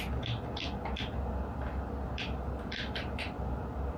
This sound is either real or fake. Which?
real